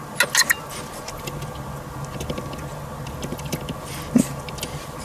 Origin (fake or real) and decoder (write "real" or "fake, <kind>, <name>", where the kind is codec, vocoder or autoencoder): real